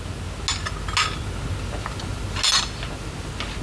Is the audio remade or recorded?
recorded